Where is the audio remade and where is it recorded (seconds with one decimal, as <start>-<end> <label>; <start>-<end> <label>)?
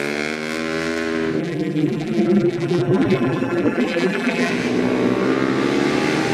0.0-1.4 recorded; 1.4-4.5 remade; 4.5-6.3 recorded